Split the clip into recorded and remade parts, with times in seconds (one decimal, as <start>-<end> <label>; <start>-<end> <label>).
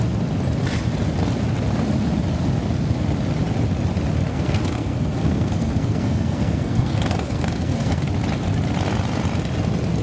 0.0-4.3 recorded; 4.3-8.1 remade; 8.1-10.0 recorded